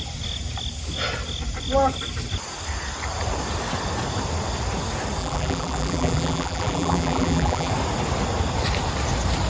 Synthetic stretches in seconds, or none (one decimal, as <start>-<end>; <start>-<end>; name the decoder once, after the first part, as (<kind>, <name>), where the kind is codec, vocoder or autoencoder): 5.2-7.7 (vocoder, BigVGAN v2)